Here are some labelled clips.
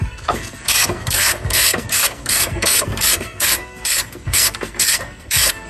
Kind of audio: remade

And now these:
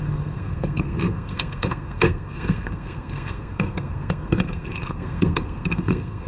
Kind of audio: remade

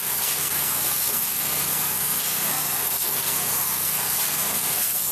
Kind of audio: remade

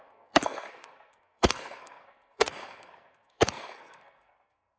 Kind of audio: remade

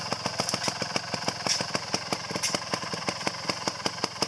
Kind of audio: recorded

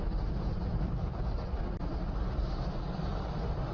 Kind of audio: recorded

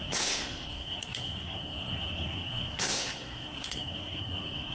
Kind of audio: remade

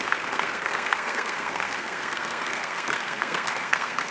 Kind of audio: remade